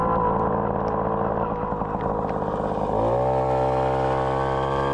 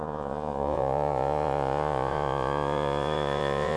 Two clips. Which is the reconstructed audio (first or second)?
second